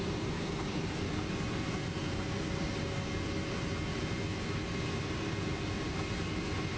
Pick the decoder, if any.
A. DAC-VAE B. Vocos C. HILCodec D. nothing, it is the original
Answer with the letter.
D